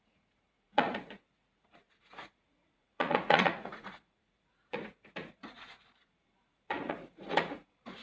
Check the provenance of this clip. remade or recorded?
remade